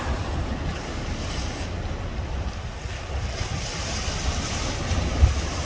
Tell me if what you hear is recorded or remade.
recorded